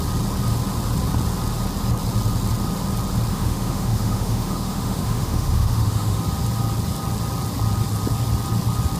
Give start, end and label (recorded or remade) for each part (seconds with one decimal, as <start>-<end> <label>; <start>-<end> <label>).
0.0-3.3 recorded; 3.3-6.2 remade; 6.2-9.0 recorded